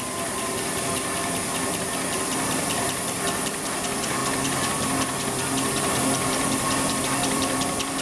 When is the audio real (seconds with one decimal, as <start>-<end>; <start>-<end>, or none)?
none